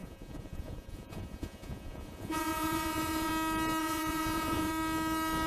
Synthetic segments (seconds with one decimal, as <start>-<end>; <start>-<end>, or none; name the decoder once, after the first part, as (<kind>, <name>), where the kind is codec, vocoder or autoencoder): 0.0-3.3 (vocoder, Vocos); 3.8-4.7